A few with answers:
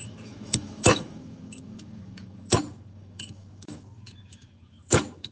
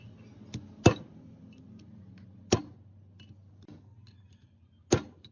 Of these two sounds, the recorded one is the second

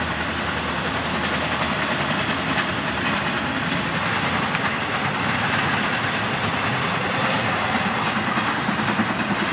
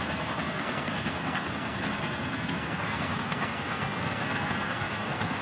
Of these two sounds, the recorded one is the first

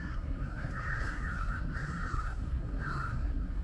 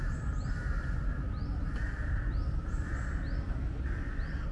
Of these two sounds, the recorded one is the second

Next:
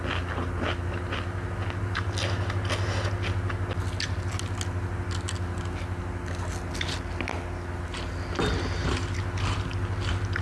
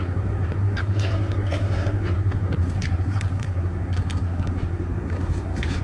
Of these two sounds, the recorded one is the first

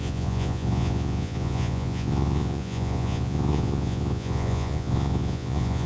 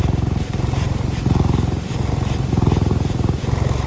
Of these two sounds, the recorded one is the second